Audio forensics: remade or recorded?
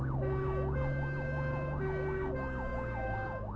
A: remade